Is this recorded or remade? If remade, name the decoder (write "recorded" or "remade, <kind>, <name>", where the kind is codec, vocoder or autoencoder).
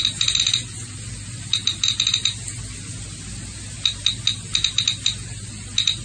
recorded